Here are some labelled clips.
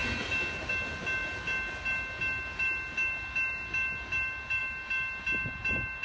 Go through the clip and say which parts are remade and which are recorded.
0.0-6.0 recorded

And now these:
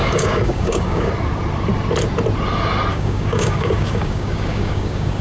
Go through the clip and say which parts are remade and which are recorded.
0.0-1.1 remade; 1.1-2.9 recorded; 2.9-5.2 remade

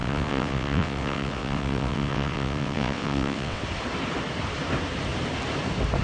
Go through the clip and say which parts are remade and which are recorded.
0.0-3.6 remade; 3.6-6.0 recorded

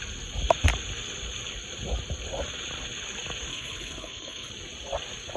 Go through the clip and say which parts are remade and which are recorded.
0.0-3.5 recorded; 3.5-4.5 remade; 4.5-5.4 recorded

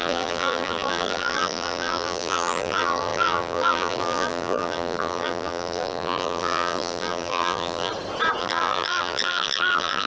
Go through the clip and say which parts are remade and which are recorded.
0.0-7.9 remade; 7.9-8.4 recorded; 8.4-10.1 remade